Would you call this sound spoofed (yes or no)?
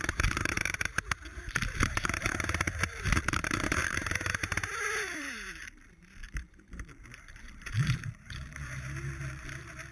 yes